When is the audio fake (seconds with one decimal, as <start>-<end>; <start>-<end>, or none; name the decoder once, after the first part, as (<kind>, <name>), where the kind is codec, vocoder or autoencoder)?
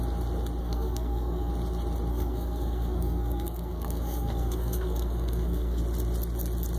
0.6-1.5 (codec, SNAC); 2.1-5.8